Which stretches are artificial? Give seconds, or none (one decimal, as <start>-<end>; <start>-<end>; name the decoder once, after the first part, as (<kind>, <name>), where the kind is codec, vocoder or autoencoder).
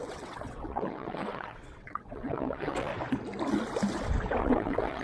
0.0-2.9 (vocoder, WaveNeXt); 4.4-5.0